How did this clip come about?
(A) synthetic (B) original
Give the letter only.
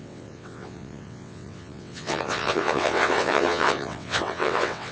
A